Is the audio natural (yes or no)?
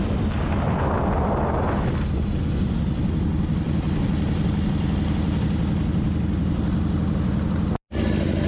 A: yes